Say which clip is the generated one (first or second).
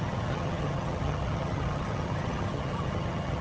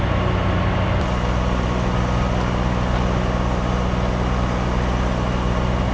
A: first